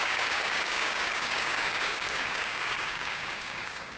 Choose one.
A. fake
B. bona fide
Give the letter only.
A